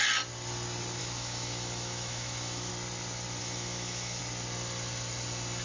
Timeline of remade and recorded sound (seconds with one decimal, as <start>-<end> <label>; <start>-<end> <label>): 0.0-1.0 recorded; 1.0-2.7 remade; 2.7-3.4 recorded; 3.4-4.2 remade; 4.2-5.6 recorded